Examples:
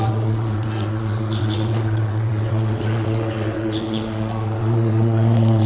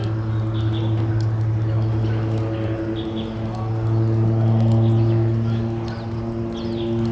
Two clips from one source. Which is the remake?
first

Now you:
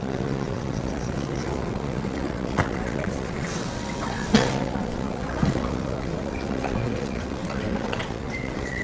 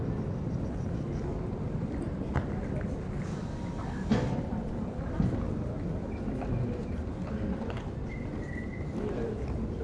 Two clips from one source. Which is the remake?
first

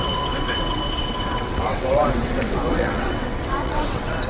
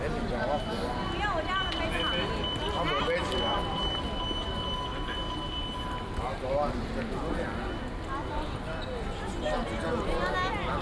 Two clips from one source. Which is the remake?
first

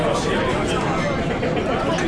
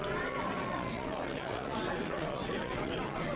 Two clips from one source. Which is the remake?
second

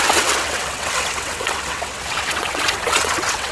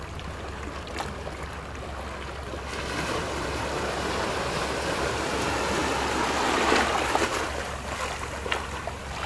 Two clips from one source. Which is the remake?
first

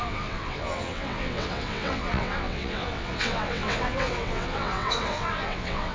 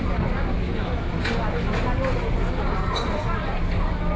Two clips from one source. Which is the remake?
first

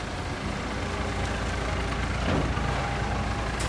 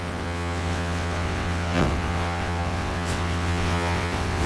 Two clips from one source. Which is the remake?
second